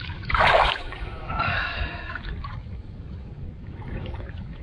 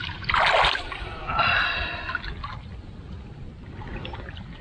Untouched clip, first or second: second